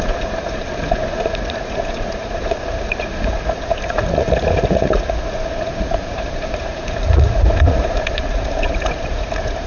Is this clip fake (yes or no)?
yes